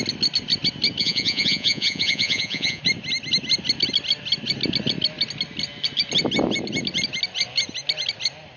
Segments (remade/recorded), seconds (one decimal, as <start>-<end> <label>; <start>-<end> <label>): 0.0-1.0 recorded; 1.0-2.8 remade; 2.8-8.6 recorded